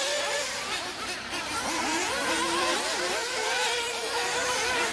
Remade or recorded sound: remade